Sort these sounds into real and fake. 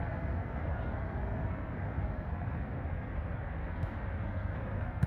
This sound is fake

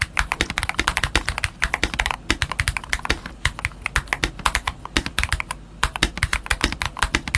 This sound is real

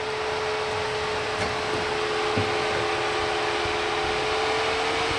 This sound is real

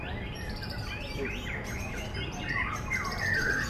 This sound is fake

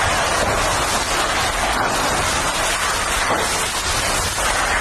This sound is real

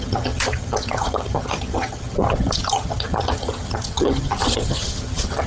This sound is fake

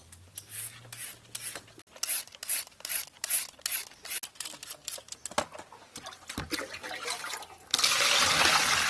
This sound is real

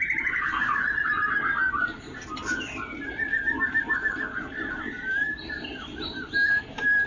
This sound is fake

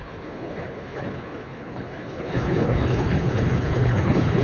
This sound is fake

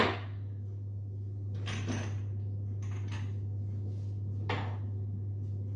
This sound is real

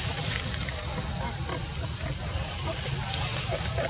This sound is real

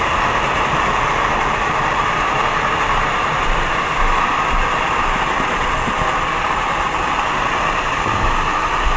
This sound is real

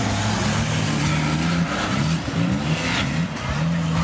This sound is real